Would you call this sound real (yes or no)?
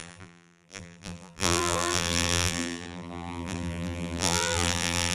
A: no